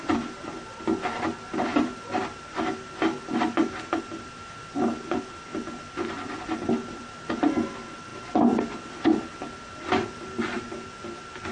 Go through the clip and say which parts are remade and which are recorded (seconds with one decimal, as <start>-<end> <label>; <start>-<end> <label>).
0.0-11.5 recorded